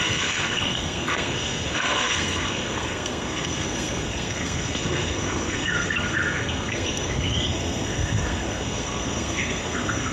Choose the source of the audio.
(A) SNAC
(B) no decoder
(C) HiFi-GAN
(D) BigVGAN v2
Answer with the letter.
A